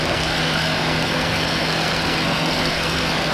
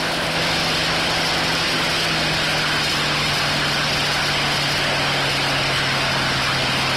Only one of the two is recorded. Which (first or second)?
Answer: second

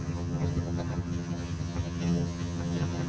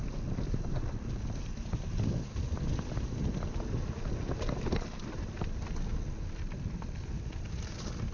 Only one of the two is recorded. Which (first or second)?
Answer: second